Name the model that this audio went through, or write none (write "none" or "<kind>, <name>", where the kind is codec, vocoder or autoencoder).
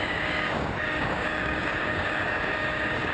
codec, DAC